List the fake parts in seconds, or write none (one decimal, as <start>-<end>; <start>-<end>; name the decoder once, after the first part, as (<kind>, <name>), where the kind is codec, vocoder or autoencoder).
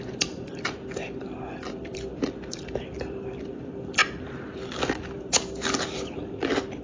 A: 0.0-0.8 (vocoder, BigVGAN v2); 1.7-6.8